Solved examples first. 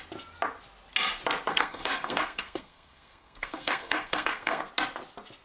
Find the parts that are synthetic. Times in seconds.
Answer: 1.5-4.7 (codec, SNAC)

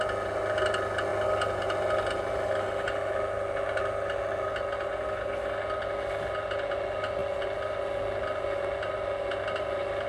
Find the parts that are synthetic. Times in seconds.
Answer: none

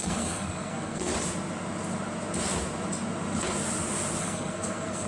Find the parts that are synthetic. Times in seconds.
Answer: 0.0-1.1 (codec, SNAC); 4.2-5.1